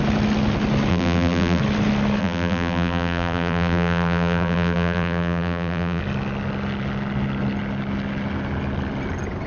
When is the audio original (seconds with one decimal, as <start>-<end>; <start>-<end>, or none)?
0.0-0.9; 1.6-2.2; 6.0-9.5